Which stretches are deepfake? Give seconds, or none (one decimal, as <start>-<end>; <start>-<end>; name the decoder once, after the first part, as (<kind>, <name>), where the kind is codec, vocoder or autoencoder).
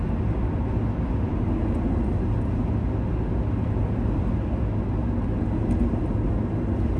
none